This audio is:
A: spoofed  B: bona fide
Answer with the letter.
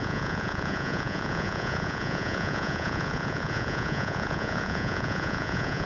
A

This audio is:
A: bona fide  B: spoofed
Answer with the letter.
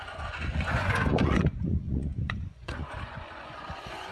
B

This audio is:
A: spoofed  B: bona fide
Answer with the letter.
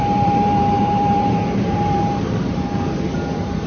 A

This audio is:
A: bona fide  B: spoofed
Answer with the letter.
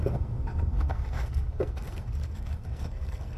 B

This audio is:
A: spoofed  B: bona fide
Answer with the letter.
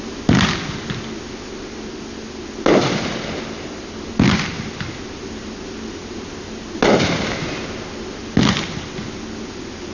B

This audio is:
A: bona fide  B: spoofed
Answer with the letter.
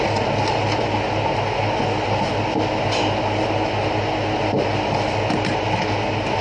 A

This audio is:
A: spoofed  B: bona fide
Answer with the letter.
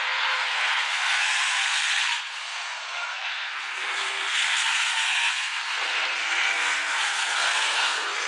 A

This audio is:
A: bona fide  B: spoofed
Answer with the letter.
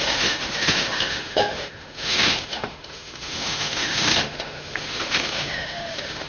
B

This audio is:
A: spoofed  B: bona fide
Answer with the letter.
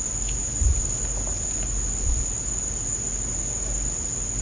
B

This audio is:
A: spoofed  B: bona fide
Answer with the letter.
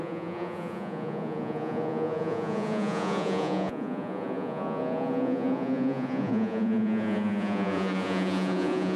A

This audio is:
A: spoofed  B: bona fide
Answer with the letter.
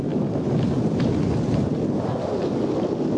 B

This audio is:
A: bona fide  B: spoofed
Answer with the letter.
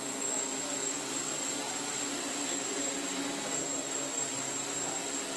A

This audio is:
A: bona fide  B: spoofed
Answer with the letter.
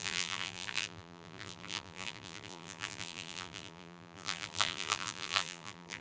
B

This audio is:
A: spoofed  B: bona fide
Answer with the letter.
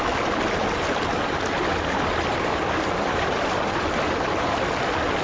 B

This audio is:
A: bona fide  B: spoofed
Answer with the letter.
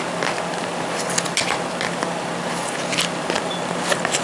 A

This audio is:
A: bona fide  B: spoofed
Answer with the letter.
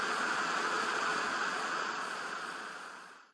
B